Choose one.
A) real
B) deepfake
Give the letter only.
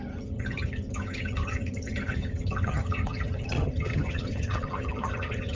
B